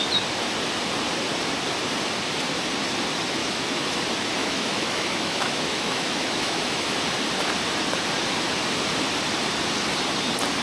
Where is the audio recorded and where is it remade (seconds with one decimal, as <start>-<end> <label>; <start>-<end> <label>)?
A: 0.0-3.4 recorded; 3.4-4.0 remade; 4.0-4.4 recorded; 4.4-6.9 remade; 6.9-10.6 recorded